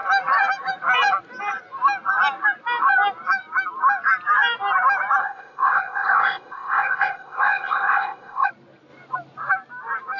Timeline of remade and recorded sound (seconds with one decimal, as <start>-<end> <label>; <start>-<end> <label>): 0.0-5.2 recorded; 5.2-8.5 remade; 8.5-10.2 recorded